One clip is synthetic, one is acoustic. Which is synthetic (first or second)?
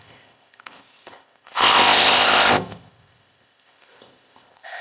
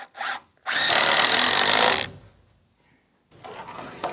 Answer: first